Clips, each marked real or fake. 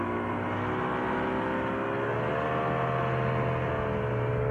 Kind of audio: real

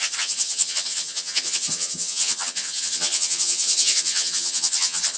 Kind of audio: fake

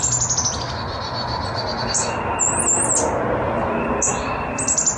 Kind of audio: real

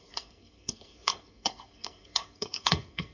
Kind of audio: fake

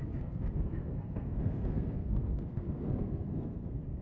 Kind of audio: fake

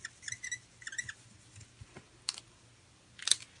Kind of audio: real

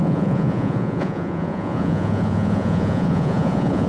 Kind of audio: fake